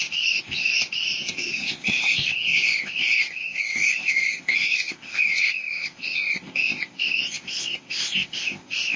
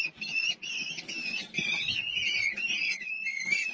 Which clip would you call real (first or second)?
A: second